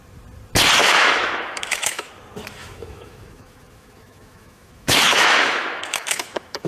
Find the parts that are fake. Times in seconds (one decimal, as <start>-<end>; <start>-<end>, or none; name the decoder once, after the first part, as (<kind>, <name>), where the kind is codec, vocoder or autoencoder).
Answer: 0.8-2.1 (autoencoder, DAC-VAE); 2.6-6.7